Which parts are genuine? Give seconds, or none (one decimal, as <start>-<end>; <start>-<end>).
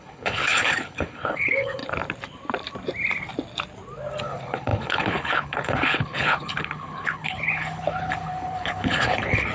1.8-4.2